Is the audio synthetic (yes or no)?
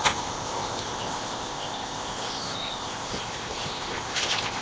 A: yes